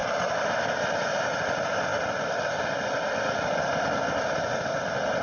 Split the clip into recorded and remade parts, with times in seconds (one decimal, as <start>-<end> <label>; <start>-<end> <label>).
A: 0.0-5.2 recorded